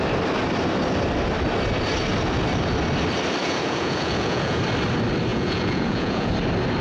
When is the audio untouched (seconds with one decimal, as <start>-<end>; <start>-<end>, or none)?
0.0-3.4; 4.6-5.3; 6.3-6.8